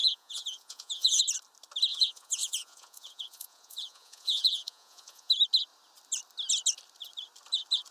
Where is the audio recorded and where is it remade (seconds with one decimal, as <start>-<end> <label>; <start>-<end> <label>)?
0.0-1.2 remade; 1.2-1.9 recorded; 1.9-5.3 remade; 5.3-7.9 recorded